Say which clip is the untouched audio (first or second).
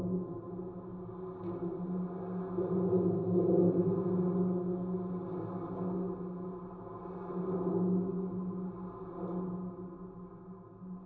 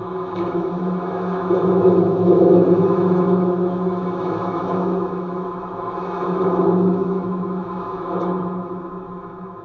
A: first